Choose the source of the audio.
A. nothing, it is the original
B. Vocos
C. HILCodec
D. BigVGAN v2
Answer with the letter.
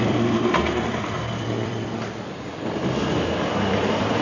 D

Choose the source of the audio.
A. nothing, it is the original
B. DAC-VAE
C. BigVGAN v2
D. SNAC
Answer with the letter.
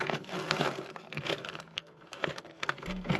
D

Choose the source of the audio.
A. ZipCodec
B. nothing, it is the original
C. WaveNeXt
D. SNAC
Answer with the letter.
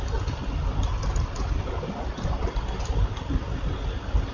B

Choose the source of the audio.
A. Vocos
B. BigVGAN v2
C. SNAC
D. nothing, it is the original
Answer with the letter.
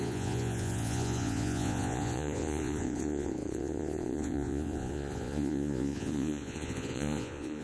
A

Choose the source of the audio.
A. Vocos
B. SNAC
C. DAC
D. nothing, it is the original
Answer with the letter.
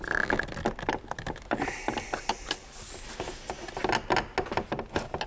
D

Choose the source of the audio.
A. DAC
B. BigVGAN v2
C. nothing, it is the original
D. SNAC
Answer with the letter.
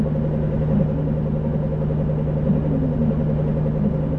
C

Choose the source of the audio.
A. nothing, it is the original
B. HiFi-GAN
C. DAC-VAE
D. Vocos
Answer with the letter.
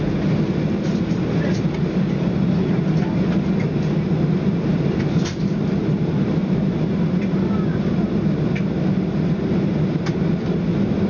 A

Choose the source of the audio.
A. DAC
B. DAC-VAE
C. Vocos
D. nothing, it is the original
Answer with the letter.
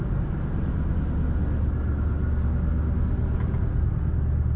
D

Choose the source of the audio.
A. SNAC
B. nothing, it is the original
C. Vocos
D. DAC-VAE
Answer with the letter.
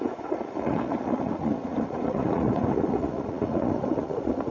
C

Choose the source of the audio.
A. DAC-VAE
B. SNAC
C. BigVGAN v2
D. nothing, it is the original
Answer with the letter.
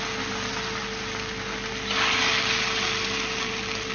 C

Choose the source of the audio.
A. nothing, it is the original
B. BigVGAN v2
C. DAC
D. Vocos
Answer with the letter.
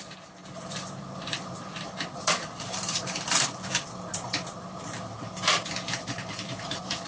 B